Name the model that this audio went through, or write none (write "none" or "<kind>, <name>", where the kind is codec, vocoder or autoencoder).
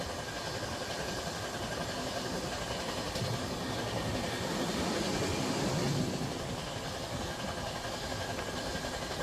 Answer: none